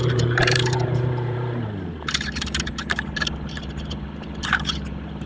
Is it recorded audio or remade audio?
remade